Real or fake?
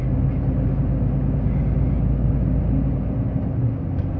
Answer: real